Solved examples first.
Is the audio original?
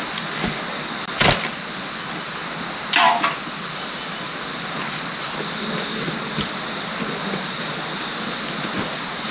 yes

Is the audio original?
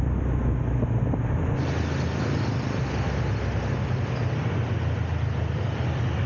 yes